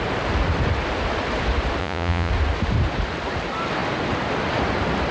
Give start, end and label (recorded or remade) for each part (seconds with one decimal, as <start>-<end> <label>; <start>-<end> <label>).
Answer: 0.0-1.8 recorded; 1.8-2.3 remade; 2.3-5.1 recorded